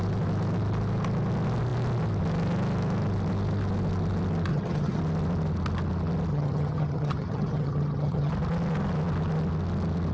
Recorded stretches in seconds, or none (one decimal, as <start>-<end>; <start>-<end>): 0.0-4.5; 5.0-6.3; 8.3-10.1